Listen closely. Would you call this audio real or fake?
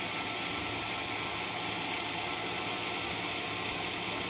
real